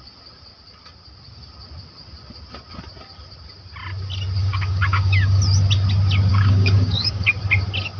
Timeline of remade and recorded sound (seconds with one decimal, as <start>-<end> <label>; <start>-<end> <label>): 0.0-4.4 recorded; 4.4-5.4 remade; 5.4-6.3 recorded; 6.3-7.4 remade; 7.4-8.0 recorded